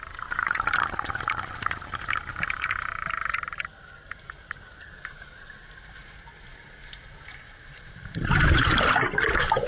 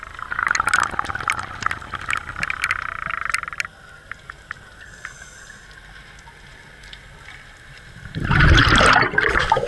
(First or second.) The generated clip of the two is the first